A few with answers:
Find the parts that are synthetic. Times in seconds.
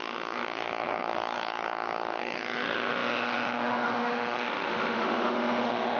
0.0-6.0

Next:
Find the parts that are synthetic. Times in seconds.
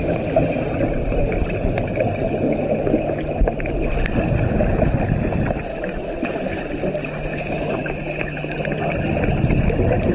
5.7-6.6; 7.3-8.0